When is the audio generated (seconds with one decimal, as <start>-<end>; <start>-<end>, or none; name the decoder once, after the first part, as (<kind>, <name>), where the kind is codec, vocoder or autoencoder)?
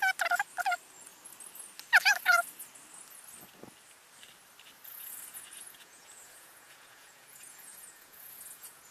4.9-8.9 (vocoder, Vocos)